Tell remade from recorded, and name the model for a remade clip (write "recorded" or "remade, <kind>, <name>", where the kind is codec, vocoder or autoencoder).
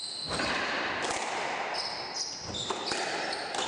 recorded